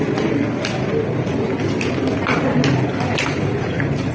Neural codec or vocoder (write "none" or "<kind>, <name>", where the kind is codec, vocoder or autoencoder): none